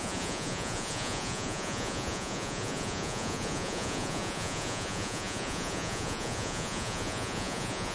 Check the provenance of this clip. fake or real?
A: fake